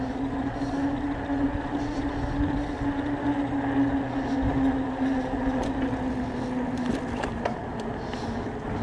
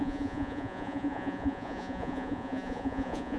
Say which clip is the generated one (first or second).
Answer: second